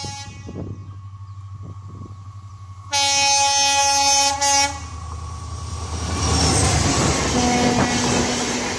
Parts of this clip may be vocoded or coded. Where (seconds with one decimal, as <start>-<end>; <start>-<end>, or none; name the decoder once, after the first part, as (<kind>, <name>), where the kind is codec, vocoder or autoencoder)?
none